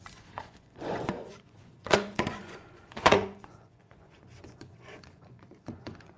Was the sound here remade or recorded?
remade